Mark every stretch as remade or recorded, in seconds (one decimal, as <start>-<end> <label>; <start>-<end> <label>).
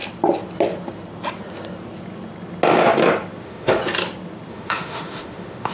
0.0-3.4 recorded; 3.4-3.8 remade; 3.8-4.5 recorded; 4.5-5.7 remade